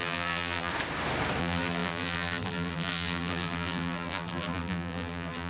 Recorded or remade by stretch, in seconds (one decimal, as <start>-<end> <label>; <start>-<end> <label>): 0.0-0.7 remade; 0.7-1.4 recorded; 1.4-5.5 remade